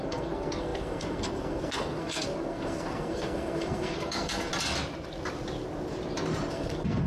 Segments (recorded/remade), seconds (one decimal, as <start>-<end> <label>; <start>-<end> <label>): 0.0-4.5 remade; 4.5-6.5 recorded; 6.5-7.1 remade